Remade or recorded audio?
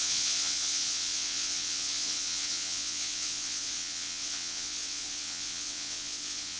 remade